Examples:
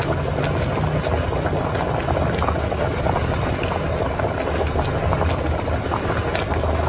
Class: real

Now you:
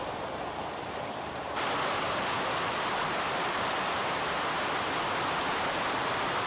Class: real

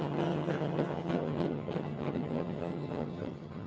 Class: fake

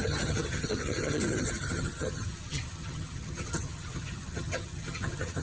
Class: fake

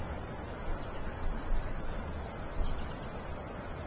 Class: real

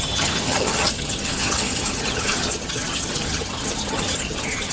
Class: fake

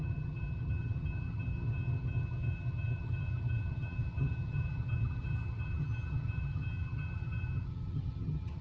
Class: fake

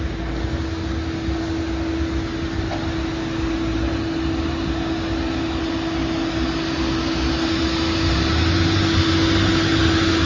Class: real